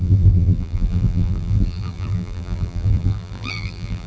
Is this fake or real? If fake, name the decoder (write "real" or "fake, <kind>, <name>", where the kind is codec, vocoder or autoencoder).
fake, vocoder, BigVGAN v2